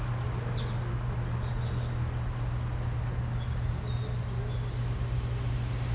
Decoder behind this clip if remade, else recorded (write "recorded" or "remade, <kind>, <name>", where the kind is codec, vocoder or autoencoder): recorded